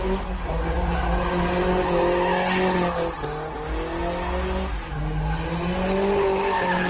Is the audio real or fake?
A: real